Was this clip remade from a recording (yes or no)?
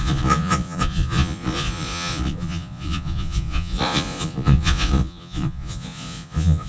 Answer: yes